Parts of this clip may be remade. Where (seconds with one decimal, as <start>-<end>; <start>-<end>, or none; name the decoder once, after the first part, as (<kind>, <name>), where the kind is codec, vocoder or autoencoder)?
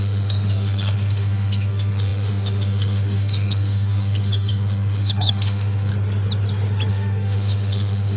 0.0-5.9 (autoencoder, DAC-VAE); 6.9-8.2